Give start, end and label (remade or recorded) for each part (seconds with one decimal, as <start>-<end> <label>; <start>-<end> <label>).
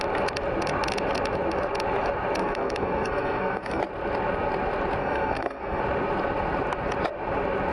0.0-2.4 recorded; 2.4-3.8 remade; 3.8-5.0 recorded; 5.0-5.8 remade; 5.8-7.7 recorded